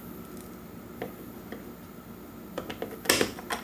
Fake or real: real